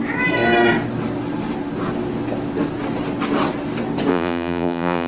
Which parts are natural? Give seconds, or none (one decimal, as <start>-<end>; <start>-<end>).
0.0-4.1